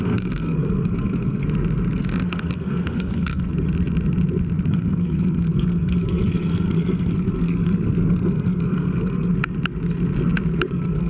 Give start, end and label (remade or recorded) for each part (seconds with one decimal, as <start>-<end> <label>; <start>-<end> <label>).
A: 0.0-1.4 remade; 1.4-2.3 recorded; 2.3-3.5 remade; 3.5-4.7 recorded; 4.7-9.3 remade; 9.3-10.7 recorded; 10.7-11.1 remade